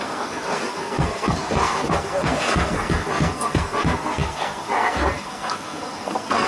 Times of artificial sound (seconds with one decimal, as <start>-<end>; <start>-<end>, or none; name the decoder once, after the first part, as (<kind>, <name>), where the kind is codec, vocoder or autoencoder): 0.0-6.5 (codec, SNAC)